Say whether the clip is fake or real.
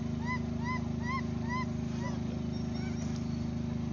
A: real